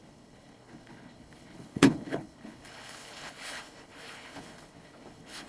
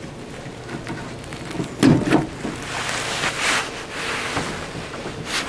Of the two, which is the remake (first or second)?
first